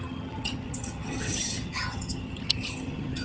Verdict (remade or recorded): remade